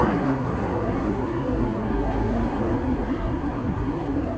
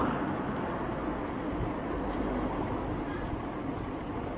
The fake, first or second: first